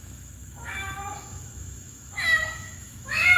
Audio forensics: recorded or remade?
remade